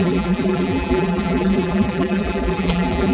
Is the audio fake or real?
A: fake